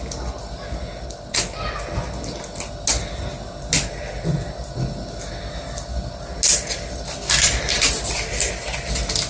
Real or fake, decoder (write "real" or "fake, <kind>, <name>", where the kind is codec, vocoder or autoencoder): real